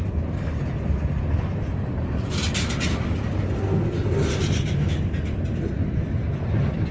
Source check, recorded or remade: recorded